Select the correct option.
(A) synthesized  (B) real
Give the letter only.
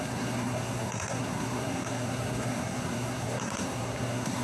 A